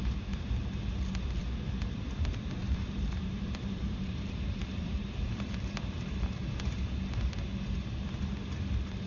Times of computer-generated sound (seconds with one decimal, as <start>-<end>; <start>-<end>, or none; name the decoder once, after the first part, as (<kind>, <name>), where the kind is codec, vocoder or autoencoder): 0.0-0.6 (vocoder, BigVGAN v2); 2.6-6.8